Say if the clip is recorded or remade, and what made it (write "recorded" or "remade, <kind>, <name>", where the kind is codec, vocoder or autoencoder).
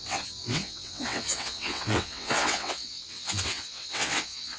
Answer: remade, vocoder, WaveNeXt